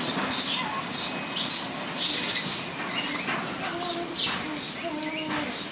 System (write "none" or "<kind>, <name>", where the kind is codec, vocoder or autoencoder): none